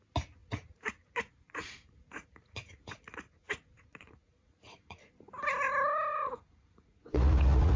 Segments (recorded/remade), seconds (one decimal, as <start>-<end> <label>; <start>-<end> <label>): 0.0-0.4 recorded; 0.4-5.1 remade; 5.1-6.1 recorded; 6.1-7.8 remade